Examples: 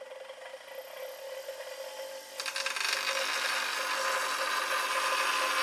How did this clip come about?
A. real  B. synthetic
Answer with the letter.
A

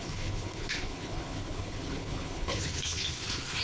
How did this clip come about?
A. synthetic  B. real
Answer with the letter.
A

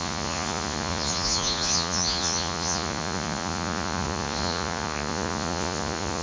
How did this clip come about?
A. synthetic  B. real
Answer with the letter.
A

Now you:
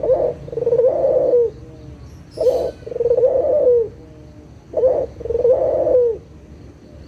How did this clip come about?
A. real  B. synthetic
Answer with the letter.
A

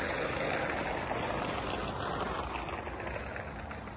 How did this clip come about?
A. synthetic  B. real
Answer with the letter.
B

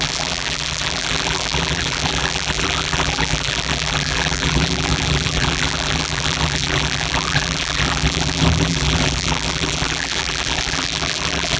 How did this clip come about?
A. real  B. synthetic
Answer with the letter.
B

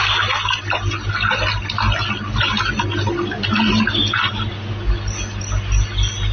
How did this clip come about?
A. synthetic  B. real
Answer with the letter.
B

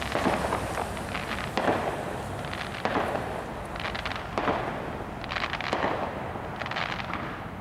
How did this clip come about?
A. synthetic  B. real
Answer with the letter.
B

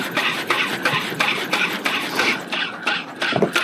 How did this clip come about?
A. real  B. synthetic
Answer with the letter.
A